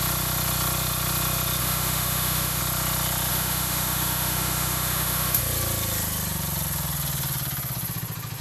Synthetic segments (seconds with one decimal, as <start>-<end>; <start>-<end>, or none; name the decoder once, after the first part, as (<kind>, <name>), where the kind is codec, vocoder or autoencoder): 1.6-2.6 (autoencoder, DAC-VAE); 3.3-5.4